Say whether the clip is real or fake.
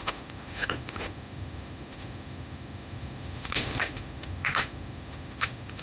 fake